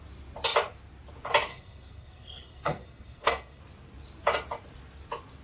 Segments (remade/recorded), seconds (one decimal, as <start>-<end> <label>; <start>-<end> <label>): 0.0-1.5 recorded; 1.5-3.6 remade; 3.6-5.4 recorded

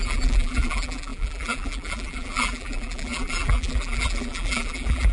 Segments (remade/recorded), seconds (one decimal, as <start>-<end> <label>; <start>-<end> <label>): 0.0-5.1 remade